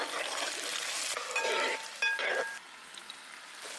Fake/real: real